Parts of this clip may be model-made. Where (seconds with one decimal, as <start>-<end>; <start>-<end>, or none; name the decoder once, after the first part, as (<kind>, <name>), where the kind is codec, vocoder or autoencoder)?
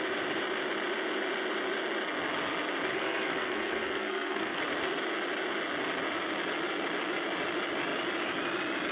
2.9-4.6 (codec, SNAC)